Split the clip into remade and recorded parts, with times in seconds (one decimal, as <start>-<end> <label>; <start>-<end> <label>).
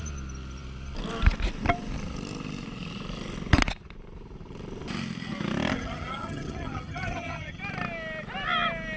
0.0-5.7 recorded; 5.7-7.6 remade; 7.6-9.0 recorded